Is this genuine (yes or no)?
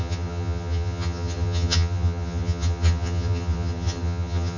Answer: no